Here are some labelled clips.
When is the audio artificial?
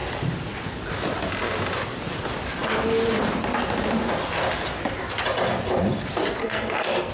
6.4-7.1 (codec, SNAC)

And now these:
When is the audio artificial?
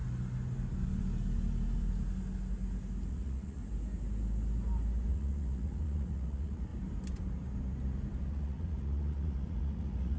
3.1-3.6 (vocoder, Vocos); 5.1-6.7; 8.3-10.2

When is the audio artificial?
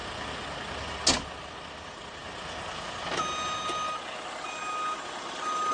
none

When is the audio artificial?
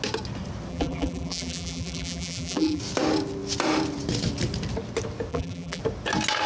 0.7-2.8 (vocoder, BigVGAN v2); 5.3-5.8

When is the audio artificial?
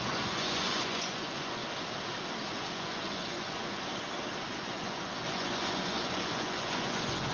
0.0-1.6 (vocoder, Vocos); 2.5-3.9; 4.5-7.3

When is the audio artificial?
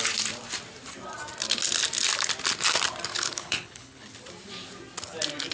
3.1-4.1 (codec, HILCodec)